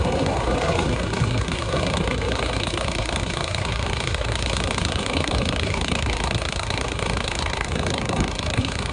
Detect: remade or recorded remade